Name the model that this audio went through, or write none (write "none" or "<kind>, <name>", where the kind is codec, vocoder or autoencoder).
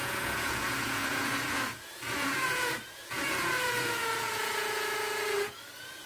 vocoder, Vocos